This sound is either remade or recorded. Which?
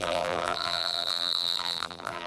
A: remade